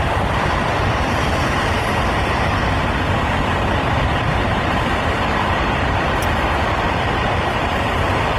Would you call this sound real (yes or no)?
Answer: yes